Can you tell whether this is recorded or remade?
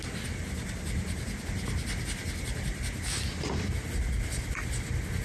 recorded